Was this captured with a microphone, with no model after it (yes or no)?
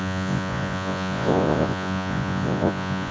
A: no